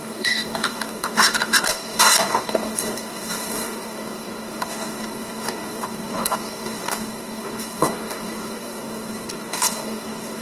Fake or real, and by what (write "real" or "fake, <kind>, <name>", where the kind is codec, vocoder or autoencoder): fake, codec, DAC